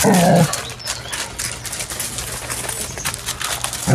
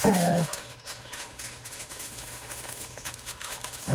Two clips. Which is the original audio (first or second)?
first